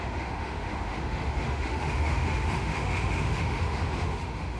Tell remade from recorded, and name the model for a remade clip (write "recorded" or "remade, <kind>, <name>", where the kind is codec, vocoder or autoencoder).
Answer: remade, autoencoder, DAC-VAE